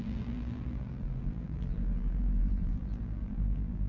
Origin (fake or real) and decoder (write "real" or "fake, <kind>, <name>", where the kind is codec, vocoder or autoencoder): fake, vocoder, BigVGAN v2